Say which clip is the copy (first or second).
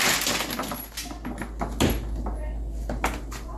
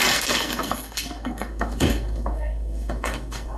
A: second